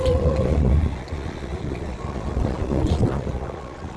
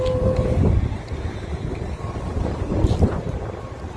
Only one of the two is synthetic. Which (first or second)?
first